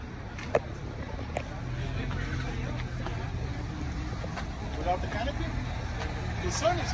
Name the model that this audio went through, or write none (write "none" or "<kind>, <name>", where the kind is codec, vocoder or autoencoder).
none